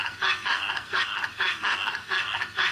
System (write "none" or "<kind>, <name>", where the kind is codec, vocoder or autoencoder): codec, SNAC